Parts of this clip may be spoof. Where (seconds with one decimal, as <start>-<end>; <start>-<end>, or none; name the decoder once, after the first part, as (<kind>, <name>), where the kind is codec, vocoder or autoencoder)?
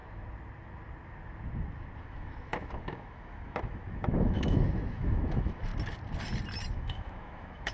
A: 2.0-5.7 (autoencoder, DAC-VAE); 6.7-7.7